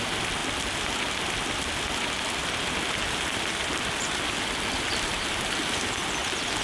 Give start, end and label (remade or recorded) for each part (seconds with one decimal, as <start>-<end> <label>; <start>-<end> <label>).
0.0-0.4 recorded; 0.4-4.4 remade; 4.4-5.1 recorded; 5.1-6.0 remade; 6.0-6.6 recorded